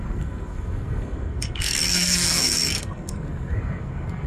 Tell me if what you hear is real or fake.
fake